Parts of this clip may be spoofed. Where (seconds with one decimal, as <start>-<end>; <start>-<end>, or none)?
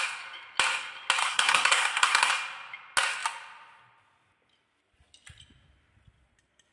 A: 1.2-2.3